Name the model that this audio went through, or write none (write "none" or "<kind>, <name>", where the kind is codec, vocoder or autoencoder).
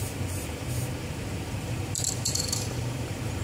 vocoder, BigVGAN v2